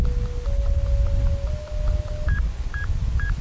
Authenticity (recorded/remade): recorded